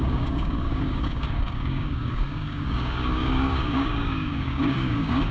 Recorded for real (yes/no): no